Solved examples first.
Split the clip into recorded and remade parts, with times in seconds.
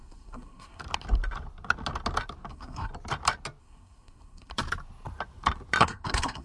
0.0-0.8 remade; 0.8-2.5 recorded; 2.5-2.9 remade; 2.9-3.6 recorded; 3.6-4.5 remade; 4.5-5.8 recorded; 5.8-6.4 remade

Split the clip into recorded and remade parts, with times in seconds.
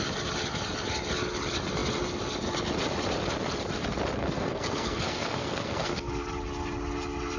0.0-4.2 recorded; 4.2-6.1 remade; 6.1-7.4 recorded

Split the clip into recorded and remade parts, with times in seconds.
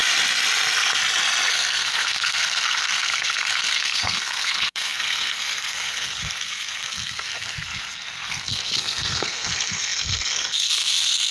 0.0-1.5 recorded; 1.5-11.3 remade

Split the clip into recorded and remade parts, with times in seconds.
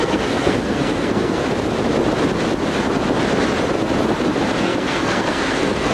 0.0-1.4 remade; 1.4-4.6 recorded; 4.6-5.9 remade